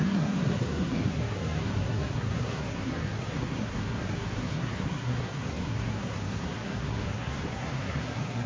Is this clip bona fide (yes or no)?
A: no